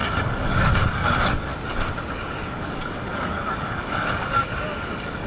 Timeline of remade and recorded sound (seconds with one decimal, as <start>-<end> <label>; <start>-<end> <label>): 0.0-1.5 remade; 1.5-2.1 recorded; 2.1-5.3 remade